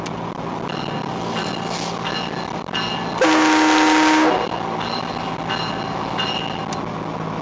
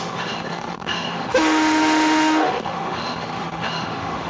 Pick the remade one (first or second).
second